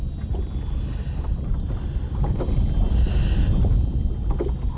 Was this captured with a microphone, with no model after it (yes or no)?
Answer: yes